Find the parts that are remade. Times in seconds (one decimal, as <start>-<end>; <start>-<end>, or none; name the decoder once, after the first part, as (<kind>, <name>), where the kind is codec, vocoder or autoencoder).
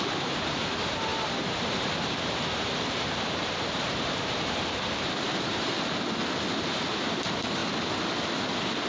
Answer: 0.0-5.7 (vocoder, BigVGAN v2); 6.9-7.6